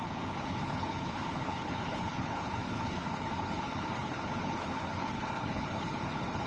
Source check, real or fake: fake